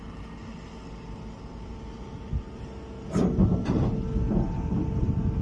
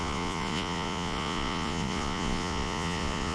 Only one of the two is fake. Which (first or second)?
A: second